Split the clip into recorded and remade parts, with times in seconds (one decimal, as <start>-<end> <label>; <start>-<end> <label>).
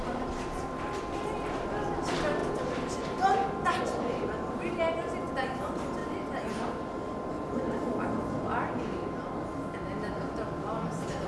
0.0-11.3 recorded